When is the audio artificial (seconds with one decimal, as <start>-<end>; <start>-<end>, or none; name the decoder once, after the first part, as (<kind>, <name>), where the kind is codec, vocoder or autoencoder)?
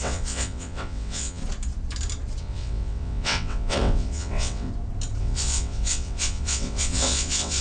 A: 0.0-1.4 (vocoder, WaveNeXt); 2.4-4.7; 5.2-7.6